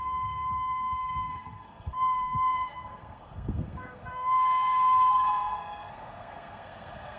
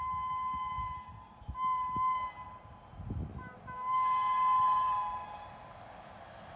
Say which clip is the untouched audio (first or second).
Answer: second